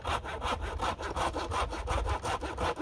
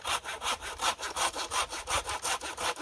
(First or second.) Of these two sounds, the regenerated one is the second